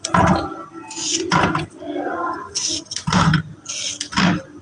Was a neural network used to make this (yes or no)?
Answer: no